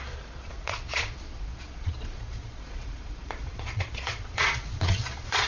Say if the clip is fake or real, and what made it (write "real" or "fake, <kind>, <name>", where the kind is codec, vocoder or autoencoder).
fake, vocoder, Vocos